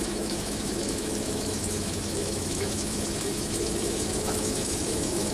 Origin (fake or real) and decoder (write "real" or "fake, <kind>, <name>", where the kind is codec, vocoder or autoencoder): fake, autoencoder, DAC-VAE